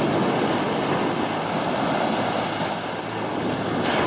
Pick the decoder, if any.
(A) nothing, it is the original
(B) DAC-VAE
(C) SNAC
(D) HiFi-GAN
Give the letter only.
A